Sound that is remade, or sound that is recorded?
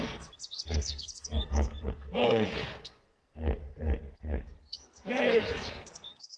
remade